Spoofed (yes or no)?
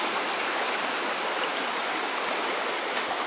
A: no